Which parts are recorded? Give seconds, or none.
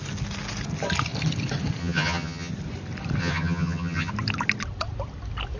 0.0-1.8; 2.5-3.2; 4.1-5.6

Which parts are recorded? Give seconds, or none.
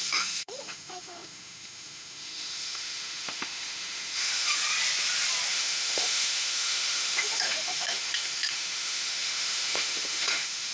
4.6-5.5